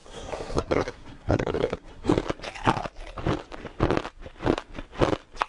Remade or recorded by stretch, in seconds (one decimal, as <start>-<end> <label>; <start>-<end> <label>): 0.0-2.1 remade; 2.1-5.5 recorded